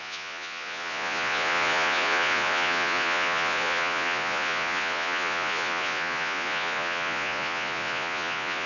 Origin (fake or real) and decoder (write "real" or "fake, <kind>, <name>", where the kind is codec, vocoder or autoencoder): fake, vocoder, Vocos